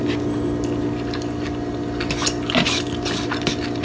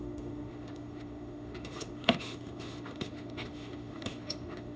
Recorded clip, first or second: first